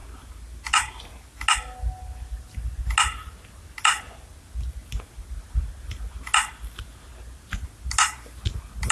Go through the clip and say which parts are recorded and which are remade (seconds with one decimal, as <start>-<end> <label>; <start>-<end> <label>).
0.0-8.9 recorded

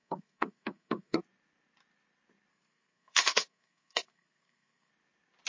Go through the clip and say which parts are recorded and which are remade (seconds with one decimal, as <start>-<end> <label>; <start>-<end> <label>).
0.0-1.2 remade; 1.2-2.5 recorded; 2.5-4.9 remade; 4.9-5.5 recorded